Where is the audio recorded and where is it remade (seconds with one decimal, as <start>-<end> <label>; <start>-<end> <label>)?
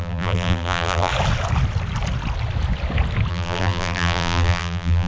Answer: 0.0-1.1 remade; 1.1-3.3 recorded; 3.3-5.1 remade